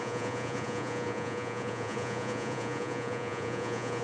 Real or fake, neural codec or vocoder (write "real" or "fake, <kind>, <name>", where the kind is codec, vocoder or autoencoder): fake, vocoder, Vocos